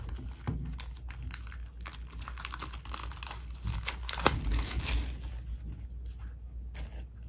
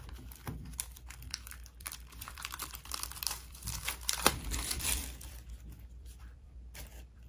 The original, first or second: first